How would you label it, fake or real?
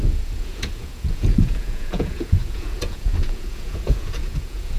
fake